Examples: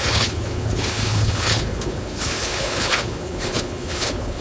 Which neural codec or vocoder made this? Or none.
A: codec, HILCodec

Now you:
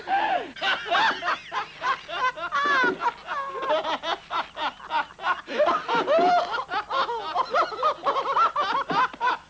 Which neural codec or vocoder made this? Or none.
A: none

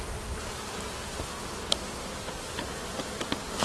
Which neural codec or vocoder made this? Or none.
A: none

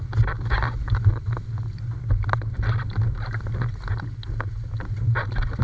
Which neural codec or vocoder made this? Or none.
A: none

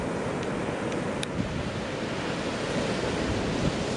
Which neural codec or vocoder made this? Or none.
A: none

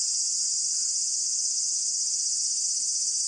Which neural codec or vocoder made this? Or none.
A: none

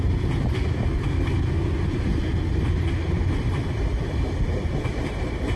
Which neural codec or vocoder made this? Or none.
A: none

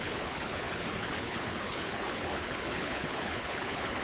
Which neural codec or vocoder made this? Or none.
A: codec, HILCodec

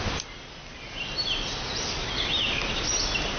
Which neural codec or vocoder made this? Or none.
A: none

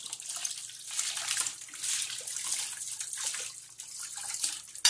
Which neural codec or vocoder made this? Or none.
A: none